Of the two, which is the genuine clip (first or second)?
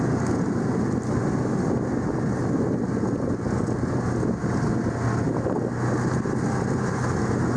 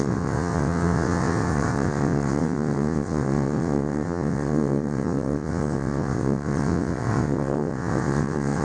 first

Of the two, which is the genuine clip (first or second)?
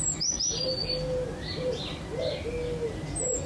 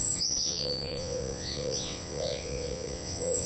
first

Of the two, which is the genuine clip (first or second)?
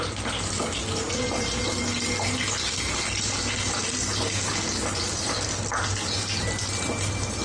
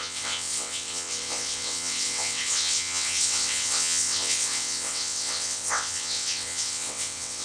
first